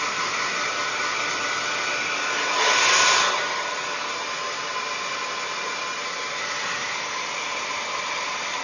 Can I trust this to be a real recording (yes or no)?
yes